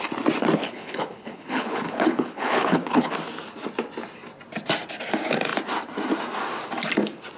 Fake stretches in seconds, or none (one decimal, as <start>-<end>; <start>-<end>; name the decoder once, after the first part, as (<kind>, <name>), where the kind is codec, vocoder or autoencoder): 0.6-3.1 (codec, HILCodec)